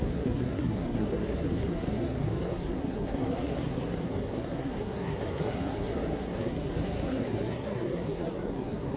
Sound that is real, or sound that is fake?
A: fake